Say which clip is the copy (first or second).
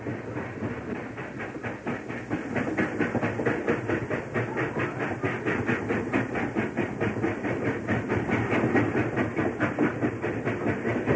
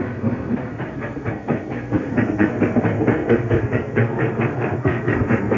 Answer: second